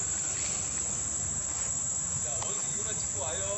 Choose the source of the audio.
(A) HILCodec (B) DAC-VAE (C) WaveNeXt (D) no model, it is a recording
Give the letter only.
D